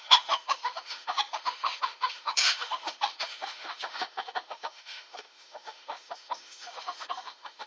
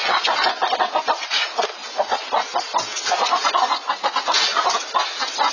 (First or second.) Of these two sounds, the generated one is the first